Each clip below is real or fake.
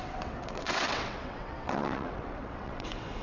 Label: fake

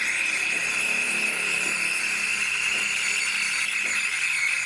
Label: real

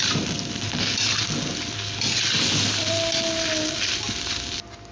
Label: real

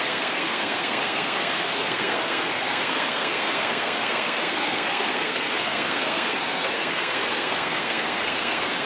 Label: fake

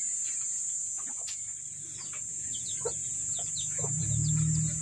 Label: real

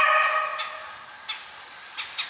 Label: real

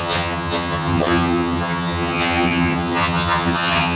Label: fake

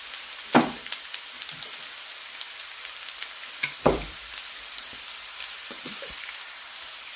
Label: fake